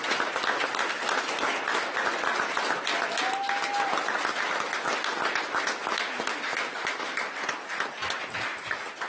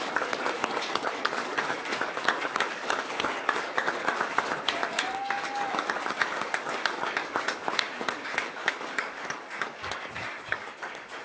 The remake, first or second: second